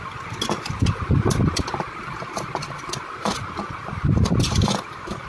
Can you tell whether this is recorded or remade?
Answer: recorded